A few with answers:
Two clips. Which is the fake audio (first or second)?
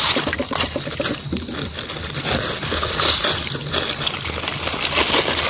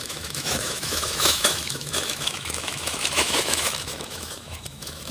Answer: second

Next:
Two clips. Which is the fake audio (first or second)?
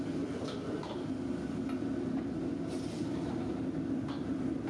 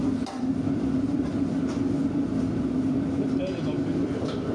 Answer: second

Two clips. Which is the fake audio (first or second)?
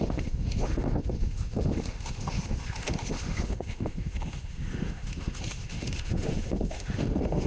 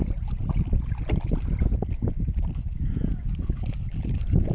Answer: first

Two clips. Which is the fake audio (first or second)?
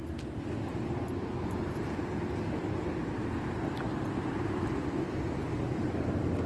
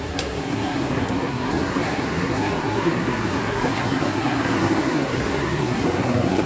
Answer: second